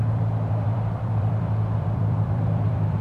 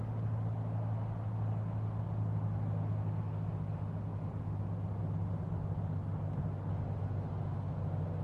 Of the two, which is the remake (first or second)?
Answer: first